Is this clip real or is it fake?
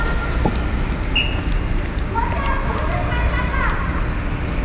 real